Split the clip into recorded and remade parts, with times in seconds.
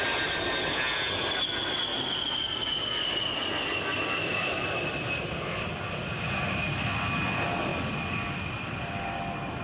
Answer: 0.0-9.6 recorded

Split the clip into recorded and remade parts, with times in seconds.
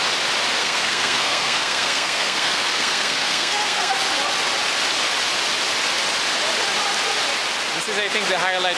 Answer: 0.0-0.6 recorded; 0.6-3.9 remade; 3.9-8.8 recorded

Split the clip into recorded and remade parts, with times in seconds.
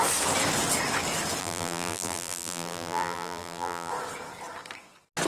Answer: 0.0-1.4 recorded; 1.4-3.9 remade; 3.9-5.3 recorded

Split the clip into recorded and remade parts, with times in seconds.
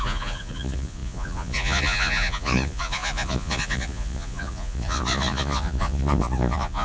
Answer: 0.0-6.8 remade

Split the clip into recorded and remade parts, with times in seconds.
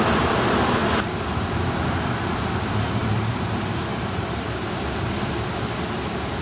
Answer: 0.0-3.0 recorded; 3.0-5.0 remade; 5.0-6.4 recorded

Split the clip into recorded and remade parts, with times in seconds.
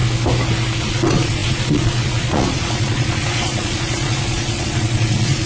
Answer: 0.0-0.8 recorded; 0.8-5.5 remade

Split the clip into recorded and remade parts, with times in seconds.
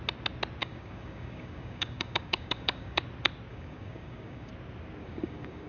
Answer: 0.0-0.6 recorded; 0.6-3.0 remade; 3.0-3.5 recorded; 3.5-4.5 remade; 4.5-5.0 recorded; 5.0-5.7 remade